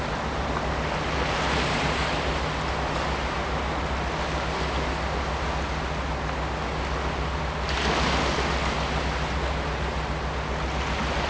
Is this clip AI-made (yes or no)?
no